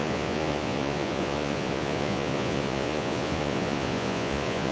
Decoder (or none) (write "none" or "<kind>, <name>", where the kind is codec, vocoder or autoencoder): vocoder, Vocos